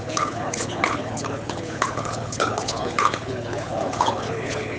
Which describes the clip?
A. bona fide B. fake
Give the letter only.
B